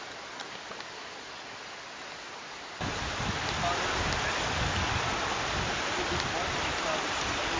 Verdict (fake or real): real